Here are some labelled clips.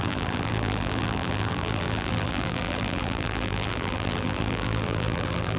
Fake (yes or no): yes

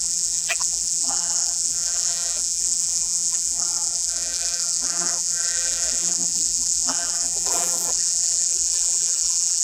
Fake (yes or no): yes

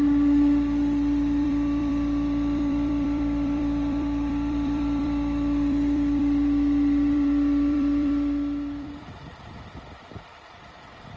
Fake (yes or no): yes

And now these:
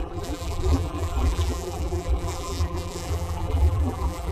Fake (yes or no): yes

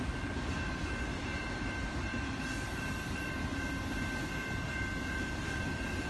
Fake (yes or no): no